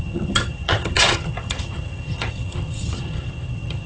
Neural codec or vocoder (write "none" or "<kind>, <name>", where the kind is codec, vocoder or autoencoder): vocoder, HiFi-GAN